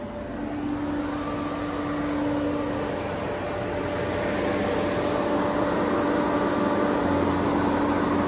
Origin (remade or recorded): recorded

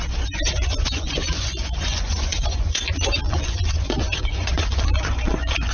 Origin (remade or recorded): remade